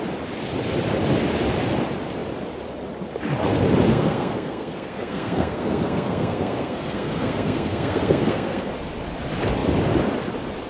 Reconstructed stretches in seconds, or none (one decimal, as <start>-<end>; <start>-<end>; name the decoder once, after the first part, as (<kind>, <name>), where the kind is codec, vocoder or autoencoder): 3.9-8.7 (codec, SNAC)